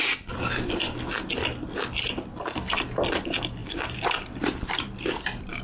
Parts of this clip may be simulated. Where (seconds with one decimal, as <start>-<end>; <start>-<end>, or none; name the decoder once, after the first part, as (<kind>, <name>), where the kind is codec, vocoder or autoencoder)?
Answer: 3.6-4.9 (vocoder, BigVGAN v2)